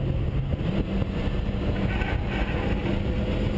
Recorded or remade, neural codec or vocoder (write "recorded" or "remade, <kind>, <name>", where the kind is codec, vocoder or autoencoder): recorded